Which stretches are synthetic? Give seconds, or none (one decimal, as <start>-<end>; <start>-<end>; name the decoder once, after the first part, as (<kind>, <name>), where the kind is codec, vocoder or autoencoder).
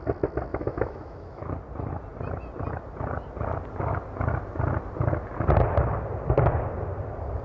0.5-1.5 (autoencoder, DAC-VAE)